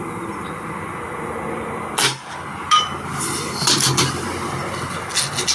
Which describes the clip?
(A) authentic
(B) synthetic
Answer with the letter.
A